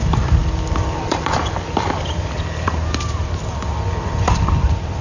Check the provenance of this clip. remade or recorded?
remade